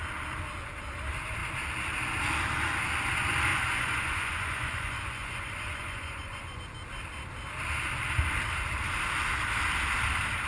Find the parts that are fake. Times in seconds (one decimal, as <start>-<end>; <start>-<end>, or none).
3.5-6.6